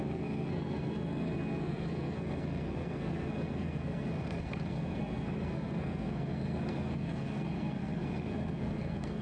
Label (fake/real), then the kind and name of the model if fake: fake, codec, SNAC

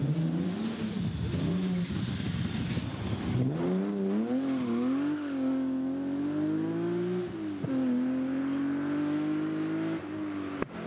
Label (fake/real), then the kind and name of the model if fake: real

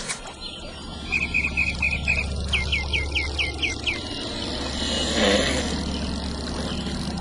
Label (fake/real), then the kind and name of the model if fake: real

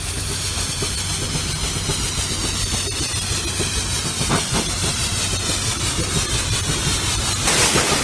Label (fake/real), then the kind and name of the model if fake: real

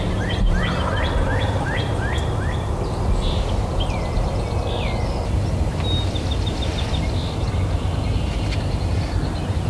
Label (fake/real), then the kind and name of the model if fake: real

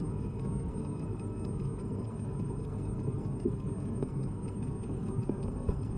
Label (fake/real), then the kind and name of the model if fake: fake, codec, SNAC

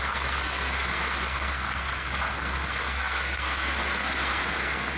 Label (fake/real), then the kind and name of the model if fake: fake, codec, SNAC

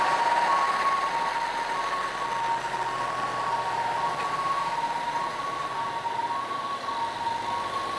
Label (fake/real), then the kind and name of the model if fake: real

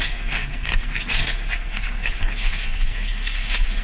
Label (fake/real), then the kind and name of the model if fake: fake, codec, SNAC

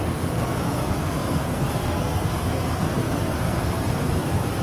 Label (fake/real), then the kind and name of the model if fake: fake, codec, SNAC